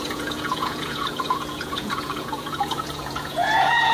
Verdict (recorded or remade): remade